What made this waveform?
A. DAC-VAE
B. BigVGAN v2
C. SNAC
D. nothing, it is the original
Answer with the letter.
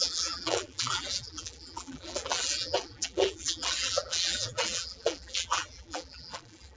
B